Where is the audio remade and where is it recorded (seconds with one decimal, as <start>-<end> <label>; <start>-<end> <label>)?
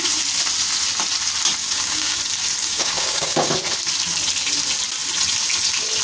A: 0.0-1.6 recorded; 1.6-2.2 remade; 2.2-2.6 recorded; 2.6-3.5 remade; 3.5-6.0 recorded